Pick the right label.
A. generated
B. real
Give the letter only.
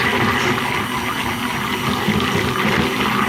B